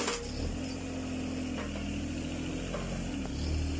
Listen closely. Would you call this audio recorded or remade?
recorded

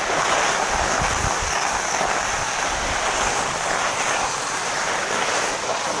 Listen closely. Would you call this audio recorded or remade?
recorded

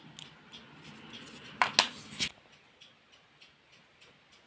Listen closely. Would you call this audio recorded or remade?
recorded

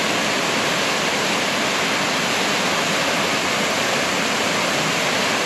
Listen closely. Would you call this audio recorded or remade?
recorded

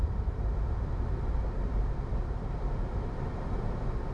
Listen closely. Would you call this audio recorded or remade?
remade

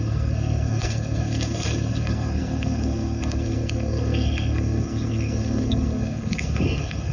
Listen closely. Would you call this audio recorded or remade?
remade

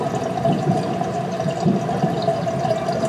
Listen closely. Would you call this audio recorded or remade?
recorded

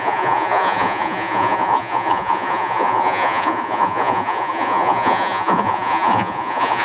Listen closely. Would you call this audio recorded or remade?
remade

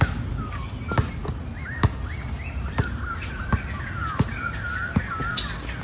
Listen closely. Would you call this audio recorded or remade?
recorded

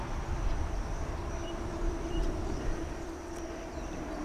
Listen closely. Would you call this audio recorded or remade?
recorded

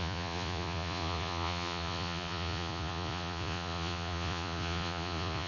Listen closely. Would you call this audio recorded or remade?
remade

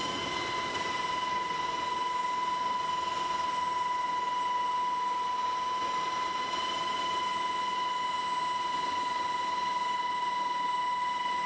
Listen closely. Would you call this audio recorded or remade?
recorded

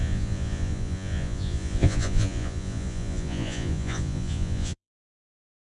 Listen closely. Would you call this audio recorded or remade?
remade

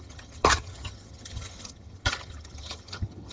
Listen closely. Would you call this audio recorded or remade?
remade